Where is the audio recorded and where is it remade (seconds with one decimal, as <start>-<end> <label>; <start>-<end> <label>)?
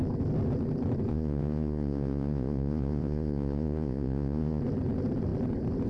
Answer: 0.0-1.1 recorded; 1.1-4.6 remade; 4.6-5.9 recorded